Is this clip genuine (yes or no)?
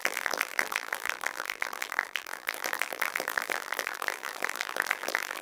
no